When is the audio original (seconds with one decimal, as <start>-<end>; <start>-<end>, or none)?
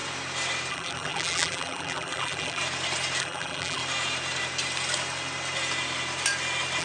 0.0-0.7; 2.6-3.2; 3.8-6.8